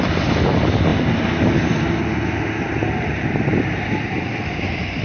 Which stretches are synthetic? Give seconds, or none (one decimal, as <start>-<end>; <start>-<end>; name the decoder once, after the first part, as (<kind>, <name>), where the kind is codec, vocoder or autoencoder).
none

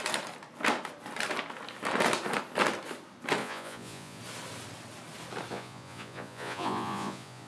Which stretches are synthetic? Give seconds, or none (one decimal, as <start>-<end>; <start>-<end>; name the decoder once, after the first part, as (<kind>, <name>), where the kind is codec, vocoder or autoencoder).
3.4-4.2 (vocoder, Vocos); 5.5-7.5

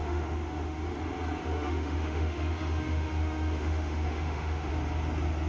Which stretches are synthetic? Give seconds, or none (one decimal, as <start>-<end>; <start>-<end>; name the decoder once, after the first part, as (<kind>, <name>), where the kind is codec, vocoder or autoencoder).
0.0-0.9 (autoencoder, DAC-VAE); 1.4-4.7

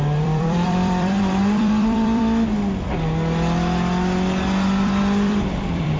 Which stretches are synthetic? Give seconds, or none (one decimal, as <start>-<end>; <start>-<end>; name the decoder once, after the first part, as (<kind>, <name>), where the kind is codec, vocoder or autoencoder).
0.0-2.2 (vocoder, BigVGAN v2); 4.8-6.0

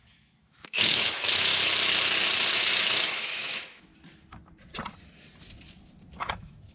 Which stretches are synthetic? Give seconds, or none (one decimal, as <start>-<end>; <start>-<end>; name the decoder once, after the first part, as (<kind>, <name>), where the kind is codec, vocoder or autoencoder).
0.0-1.5 (autoencoder, DAC-VAE); 2.5-3.9; 6.2-6.7

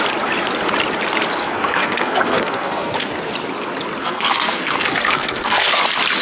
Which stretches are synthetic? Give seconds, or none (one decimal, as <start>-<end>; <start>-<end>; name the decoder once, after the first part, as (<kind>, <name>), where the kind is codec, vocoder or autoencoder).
1.4-3.1 (codec, SNAC); 4.0-5.8

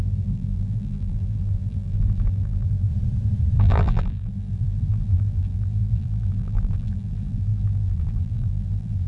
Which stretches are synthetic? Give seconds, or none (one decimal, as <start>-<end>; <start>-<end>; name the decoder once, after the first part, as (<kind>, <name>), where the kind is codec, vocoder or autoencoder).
0.0-2.9 (vocoder, BigVGAN v2); 3.6-9.1